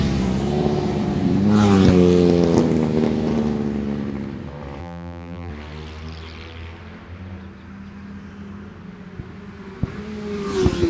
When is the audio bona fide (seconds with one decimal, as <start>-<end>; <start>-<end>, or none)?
0.0-4.8; 5.5-10.9